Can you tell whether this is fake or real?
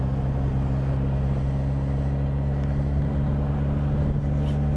real